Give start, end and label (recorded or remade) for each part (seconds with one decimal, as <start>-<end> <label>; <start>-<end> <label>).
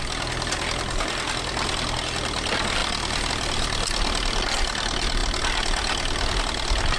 0.0-7.0 recorded